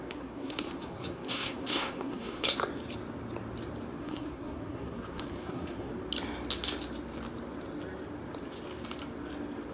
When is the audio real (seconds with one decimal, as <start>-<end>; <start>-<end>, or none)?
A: 2.6-4.0; 5.9-9.7